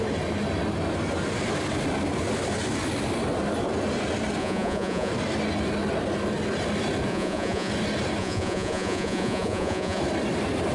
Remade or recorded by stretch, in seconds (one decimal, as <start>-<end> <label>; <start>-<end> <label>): 0.0-4.4 recorded; 4.4-5.1 remade; 5.1-7.1 recorded; 7.1-7.7 remade; 7.7-8.2 recorded; 8.2-10.0 remade; 10.0-10.7 recorded